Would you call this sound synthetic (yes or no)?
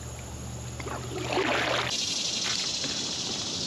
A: no